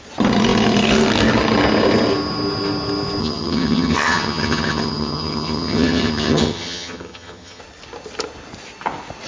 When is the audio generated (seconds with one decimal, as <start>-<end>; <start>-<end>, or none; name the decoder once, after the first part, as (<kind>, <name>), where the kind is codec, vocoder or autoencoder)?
3.2-7.6 (vocoder, HiFi-GAN)